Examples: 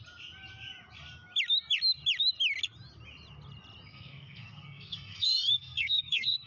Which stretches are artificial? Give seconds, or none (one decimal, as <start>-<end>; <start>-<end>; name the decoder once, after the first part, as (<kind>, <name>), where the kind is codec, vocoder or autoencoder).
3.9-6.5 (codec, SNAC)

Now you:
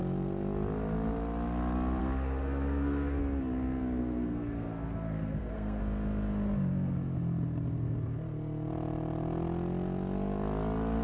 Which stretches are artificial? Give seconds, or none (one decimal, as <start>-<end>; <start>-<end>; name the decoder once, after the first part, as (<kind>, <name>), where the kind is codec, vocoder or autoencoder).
2.0-3.2 (codec, SNAC); 4.0-5.8

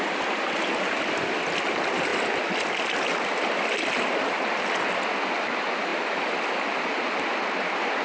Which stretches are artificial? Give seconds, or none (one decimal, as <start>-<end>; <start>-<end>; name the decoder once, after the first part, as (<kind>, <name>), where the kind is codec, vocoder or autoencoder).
none

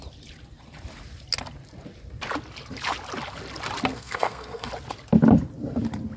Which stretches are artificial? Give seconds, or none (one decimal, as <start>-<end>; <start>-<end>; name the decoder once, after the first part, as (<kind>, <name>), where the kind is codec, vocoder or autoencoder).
3.9-4.7 (codec, SNAC)

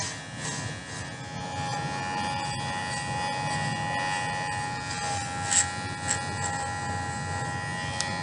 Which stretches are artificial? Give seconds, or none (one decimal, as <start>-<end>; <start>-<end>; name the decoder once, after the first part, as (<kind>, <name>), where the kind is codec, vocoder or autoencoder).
none

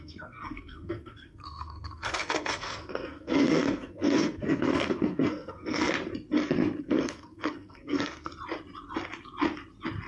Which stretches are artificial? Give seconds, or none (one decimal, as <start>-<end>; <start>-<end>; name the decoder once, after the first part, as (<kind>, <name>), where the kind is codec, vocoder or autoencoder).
0.0-5.8 (codec, SNAC); 6.8-8.3

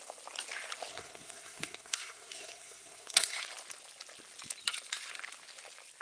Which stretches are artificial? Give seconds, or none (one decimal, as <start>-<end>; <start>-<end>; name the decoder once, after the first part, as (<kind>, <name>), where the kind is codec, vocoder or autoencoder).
0.9-3.4 (codec, SNAC)

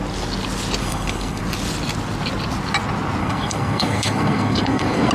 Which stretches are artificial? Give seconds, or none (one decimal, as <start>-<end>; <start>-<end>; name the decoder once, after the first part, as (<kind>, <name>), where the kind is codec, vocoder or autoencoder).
0.8-1.4 (codec, SNAC); 3.2-5.1